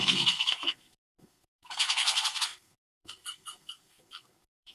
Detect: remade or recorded remade